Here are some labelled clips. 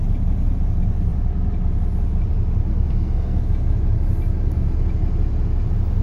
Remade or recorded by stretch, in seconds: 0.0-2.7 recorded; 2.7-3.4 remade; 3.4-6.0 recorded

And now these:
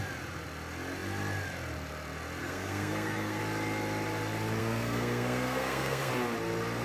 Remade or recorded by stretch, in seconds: 0.0-2.4 recorded; 2.4-3.4 remade; 3.4-4.6 recorded; 4.6-6.1 remade; 6.1-6.8 recorded

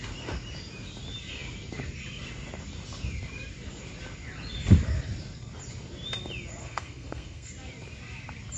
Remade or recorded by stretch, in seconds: 0.0-6.6 recorded; 6.6-7.5 remade; 7.5-8.6 recorded

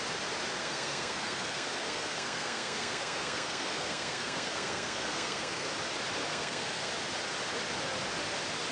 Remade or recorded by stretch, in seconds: 0.0-0.6 recorded; 0.6-5.7 remade; 5.7-6.3 recorded; 6.3-6.9 remade; 6.9-8.7 recorded

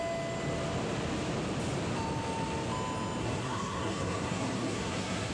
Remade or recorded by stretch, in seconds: 0.0-3.2 recorded; 3.2-5.3 remade

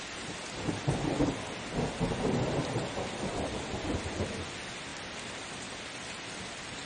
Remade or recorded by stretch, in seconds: 0.0-6.9 recorded

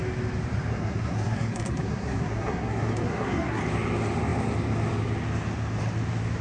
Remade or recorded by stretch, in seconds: 0.0-0.7 recorded; 0.7-3.6 remade; 3.6-6.4 recorded

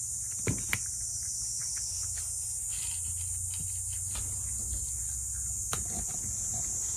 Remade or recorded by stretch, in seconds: 0.0-7.0 recorded